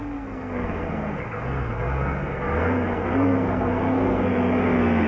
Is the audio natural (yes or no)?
no